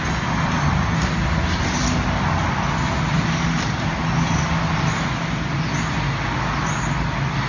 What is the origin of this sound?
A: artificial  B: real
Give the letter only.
B